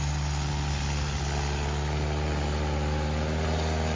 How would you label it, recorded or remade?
recorded